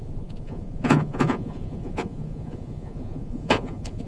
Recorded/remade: remade